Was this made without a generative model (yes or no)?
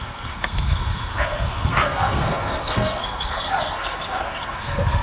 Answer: no